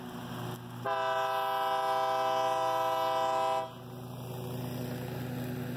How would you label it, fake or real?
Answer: real